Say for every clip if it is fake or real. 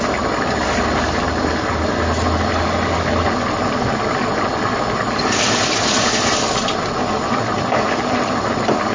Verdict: real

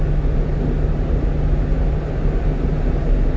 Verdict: real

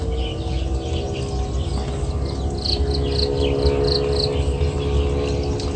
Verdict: real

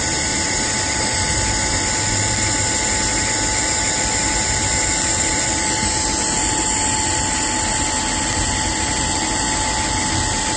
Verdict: real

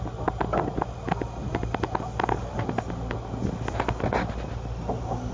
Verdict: real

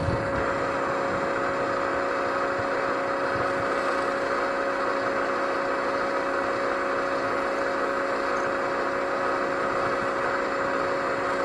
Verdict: real